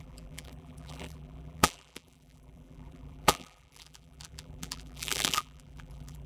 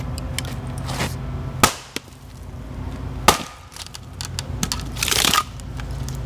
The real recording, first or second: second